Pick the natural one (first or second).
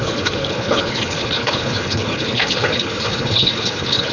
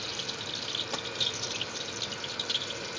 second